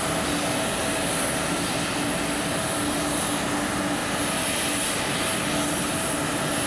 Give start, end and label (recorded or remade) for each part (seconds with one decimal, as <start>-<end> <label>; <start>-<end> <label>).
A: 0.0-6.7 recorded